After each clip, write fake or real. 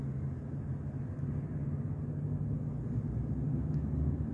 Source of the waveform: real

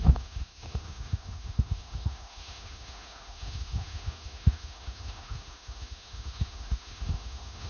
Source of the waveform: fake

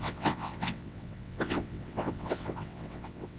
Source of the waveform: fake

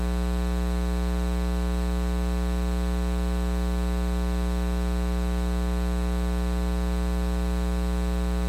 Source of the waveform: real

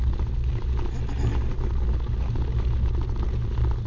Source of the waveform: real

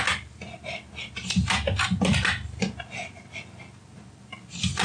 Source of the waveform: real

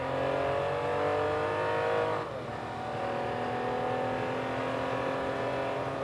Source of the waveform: real